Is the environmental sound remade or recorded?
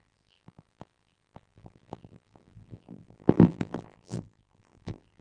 remade